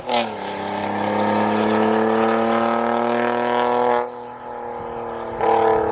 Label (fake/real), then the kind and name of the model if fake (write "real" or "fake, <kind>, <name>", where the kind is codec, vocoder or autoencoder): real